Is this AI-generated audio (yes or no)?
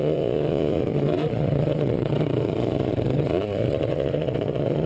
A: yes